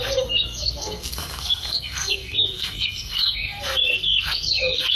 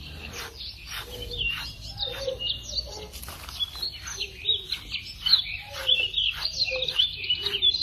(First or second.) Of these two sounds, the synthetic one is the first